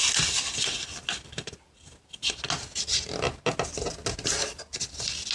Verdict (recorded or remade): recorded